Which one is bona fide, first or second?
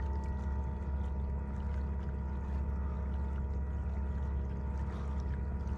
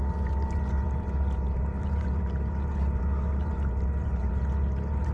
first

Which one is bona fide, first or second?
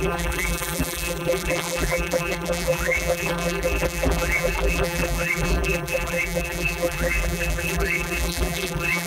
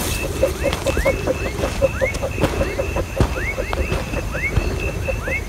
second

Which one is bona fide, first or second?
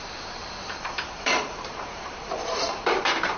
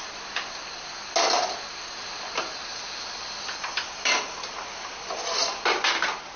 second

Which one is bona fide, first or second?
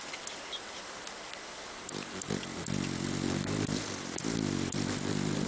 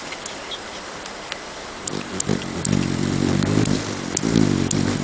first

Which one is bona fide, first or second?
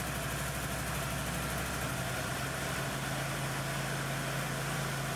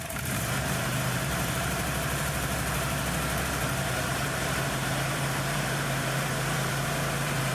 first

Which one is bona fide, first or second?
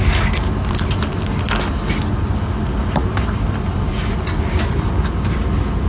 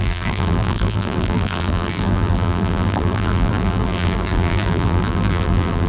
first